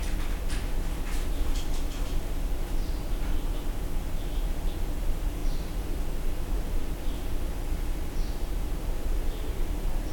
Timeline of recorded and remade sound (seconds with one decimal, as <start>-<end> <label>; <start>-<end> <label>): 0.0-10.1 recorded